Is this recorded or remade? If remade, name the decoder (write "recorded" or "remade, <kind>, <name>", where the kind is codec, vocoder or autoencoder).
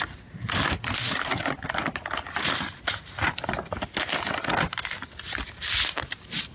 recorded